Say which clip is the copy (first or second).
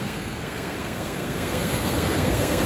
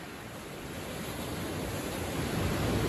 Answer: first